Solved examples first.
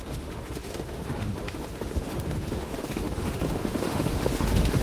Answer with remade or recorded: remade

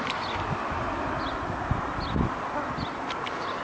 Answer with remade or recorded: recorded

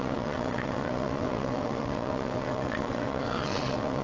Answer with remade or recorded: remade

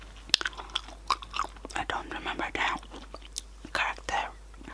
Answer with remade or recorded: recorded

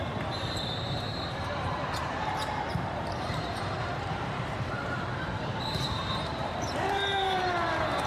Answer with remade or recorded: remade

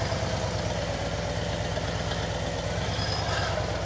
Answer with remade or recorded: recorded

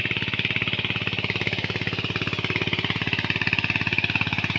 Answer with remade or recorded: recorded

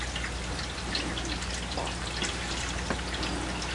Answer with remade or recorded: recorded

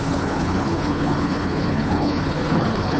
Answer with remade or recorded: remade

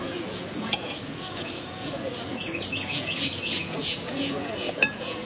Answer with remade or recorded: remade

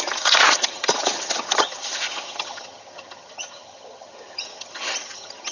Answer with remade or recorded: remade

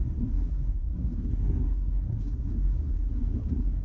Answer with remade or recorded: remade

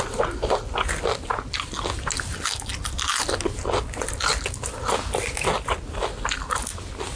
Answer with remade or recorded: recorded